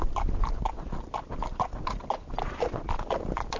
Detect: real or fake real